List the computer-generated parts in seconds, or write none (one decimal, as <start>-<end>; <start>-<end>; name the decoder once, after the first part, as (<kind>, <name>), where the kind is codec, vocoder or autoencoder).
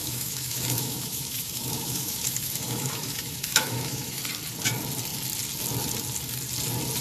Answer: 0.0-4.2 (autoencoder, DAC-VAE)